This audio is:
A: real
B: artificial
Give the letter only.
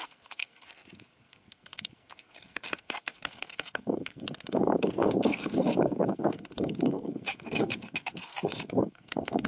B